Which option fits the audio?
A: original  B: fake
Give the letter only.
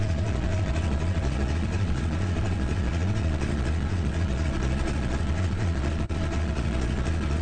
B